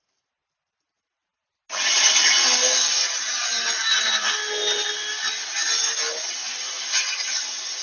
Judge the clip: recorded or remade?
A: recorded